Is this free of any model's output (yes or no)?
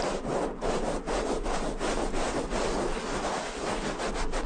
yes